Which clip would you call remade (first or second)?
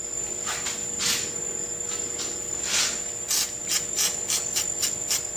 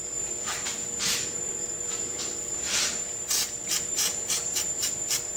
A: second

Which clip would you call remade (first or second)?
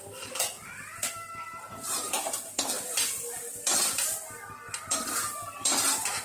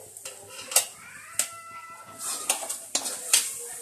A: first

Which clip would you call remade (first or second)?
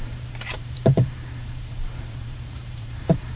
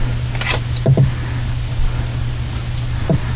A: first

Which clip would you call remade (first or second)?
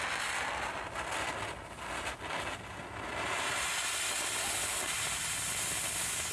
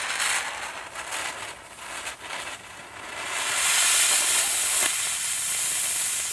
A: second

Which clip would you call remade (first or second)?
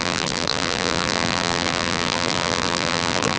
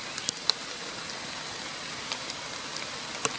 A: first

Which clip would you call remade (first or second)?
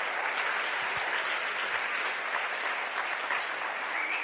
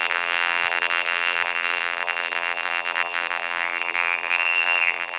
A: second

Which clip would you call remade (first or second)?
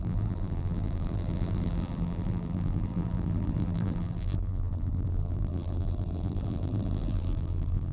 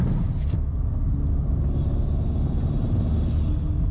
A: first